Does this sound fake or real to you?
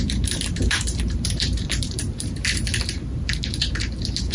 fake